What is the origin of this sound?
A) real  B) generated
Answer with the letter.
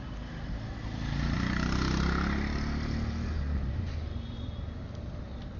A